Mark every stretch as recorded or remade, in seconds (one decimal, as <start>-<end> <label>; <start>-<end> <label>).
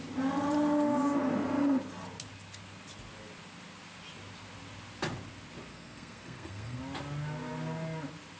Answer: 0.0-5.7 recorded; 5.7-6.8 remade; 6.8-8.4 recorded